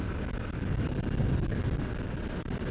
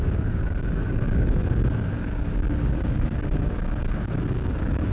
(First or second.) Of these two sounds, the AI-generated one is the second